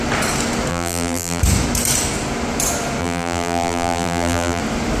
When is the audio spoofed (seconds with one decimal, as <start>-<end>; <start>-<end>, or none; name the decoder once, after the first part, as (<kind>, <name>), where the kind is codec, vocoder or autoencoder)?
0.7-1.4 (vocoder, BigVGAN v2); 3.0-4.6